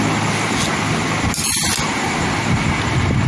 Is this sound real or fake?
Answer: real